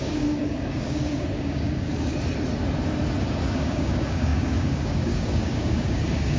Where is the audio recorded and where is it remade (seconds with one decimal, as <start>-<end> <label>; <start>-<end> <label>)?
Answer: 0.0-2.1 remade; 2.1-3.2 recorded; 3.2-6.4 remade